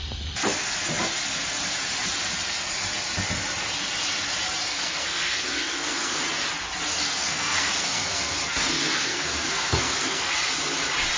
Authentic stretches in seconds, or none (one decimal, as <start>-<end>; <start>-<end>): 0.0-4.7; 6.2-6.9; 10.3-11.2